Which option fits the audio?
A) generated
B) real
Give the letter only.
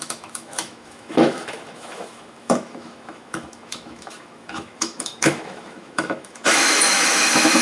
A